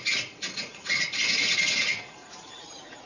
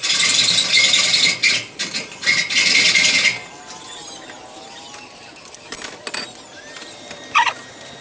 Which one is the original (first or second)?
second